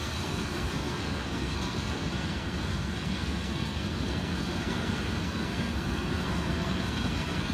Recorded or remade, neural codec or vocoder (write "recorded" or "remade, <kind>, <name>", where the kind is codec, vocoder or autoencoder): remade, codec, SNAC